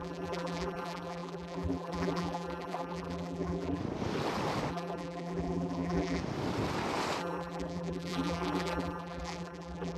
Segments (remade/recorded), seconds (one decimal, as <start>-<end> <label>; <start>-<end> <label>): 0.0-3.8 remade; 3.8-4.7 recorded; 4.7-6.2 remade; 6.2-7.2 recorded; 7.2-10.0 remade